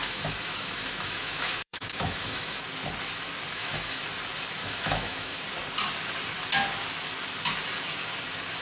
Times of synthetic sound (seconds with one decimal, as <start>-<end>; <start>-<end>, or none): 0.0-2.6; 3.5-4.0; 4.6-5.4